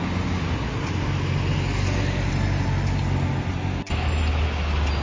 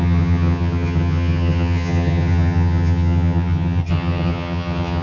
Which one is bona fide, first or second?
first